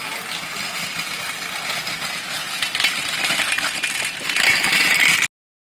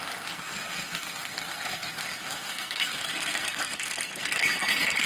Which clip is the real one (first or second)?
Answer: first